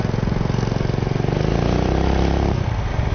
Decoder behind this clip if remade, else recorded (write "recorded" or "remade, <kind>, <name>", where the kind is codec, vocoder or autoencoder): recorded